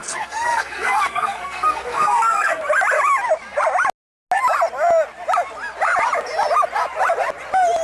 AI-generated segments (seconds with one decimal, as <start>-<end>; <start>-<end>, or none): 0.0-2.6